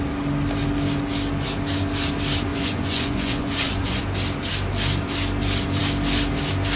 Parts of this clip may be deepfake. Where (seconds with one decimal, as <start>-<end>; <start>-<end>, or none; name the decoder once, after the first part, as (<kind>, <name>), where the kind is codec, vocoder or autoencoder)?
2.5-4.0 (vocoder, Vocos)